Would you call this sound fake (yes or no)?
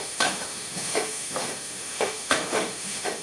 yes